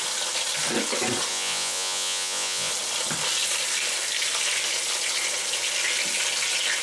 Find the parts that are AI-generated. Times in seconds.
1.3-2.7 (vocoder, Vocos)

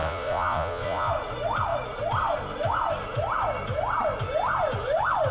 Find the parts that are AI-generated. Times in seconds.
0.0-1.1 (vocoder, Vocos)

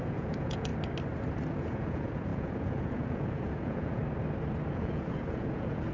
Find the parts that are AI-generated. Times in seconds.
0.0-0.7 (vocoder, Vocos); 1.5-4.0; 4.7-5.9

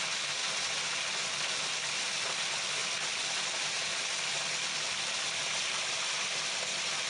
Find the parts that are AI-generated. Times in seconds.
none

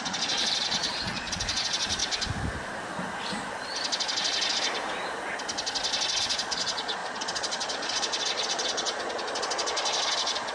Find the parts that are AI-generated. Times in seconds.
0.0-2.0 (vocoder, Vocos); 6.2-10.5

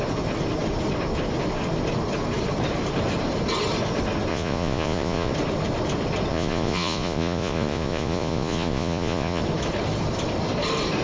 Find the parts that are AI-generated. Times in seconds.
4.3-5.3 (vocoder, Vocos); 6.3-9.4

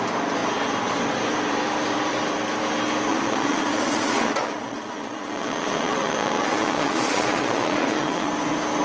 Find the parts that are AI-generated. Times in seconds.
3.1-8.3 (vocoder, Vocos)

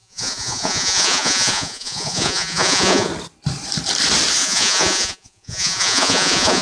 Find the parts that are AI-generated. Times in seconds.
0.0-3.1 (vocoder, Vocos); 4.4-6.6